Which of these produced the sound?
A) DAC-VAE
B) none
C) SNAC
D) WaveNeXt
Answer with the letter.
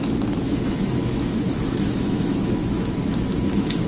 A